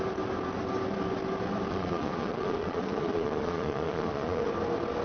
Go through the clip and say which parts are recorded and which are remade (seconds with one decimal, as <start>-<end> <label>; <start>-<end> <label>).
0.0-1.7 recorded; 1.7-4.5 remade; 4.5-5.0 recorded